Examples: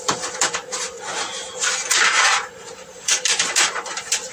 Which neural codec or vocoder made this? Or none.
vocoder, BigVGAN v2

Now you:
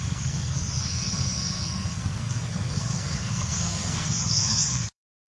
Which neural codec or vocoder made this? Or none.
codec, SNAC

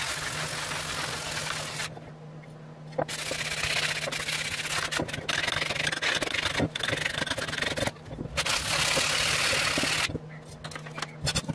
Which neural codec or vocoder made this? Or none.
none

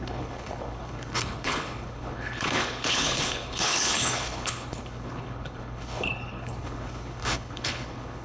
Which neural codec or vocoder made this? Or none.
codec, HILCodec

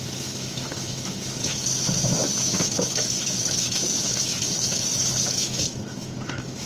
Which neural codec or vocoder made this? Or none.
autoencoder, DAC-VAE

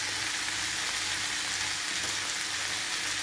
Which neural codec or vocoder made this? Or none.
none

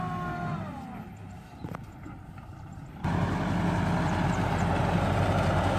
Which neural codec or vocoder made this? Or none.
none